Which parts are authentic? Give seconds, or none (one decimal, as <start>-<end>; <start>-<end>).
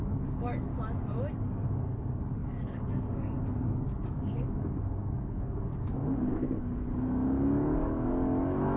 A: 0.7-1.3